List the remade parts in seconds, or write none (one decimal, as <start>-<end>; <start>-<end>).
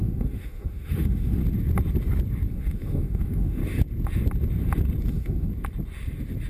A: 0.0-1.4; 2.5-3.6; 5.1-5.5